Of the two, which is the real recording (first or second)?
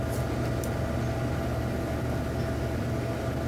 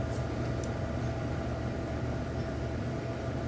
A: first